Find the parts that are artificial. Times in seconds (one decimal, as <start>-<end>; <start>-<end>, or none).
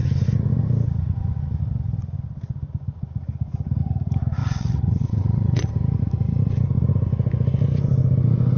4.4-5.7